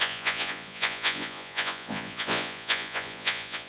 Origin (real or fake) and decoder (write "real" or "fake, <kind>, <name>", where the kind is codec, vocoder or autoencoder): fake, vocoder, Vocos